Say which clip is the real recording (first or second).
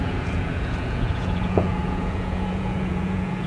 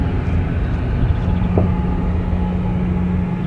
second